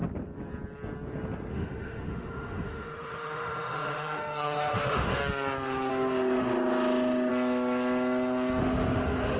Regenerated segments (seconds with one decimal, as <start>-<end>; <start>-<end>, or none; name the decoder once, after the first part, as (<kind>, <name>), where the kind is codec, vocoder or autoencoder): 1.5-5.2 (autoencoder, DAC-VAE); 5.9-7.3; 8.6-9.4